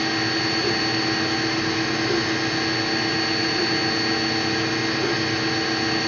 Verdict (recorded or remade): recorded